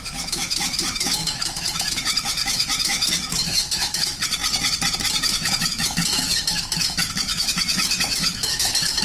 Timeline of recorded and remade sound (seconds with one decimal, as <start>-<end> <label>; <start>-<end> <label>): 0.0-4.4 remade; 4.4-5.2 recorded; 5.2-9.0 remade